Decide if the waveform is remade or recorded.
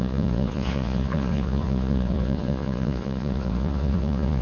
remade